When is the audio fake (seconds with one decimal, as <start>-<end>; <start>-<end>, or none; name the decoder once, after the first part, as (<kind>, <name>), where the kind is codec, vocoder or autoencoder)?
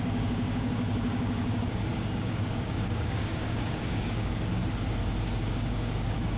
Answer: 0.0-4.6 (codec, DAC); 5.4-6.4